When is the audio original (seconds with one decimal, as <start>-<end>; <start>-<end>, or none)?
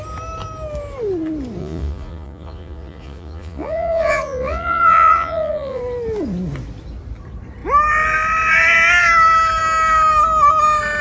0.0-1.6; 5.8-11.0